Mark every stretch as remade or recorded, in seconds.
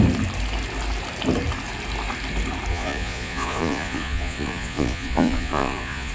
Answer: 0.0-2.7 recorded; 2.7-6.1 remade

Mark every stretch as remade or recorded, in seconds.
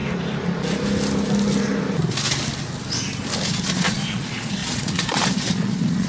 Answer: 0.0-3.7 recorded; 3.7-6.1 remade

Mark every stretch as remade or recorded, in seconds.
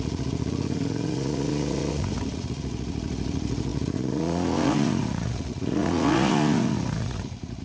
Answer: 0.0-7.6 remade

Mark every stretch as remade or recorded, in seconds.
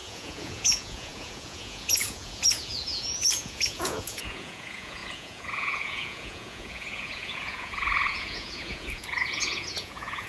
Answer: 0.0-10.3 remade